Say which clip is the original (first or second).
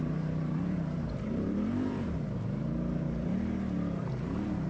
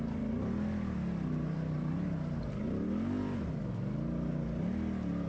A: second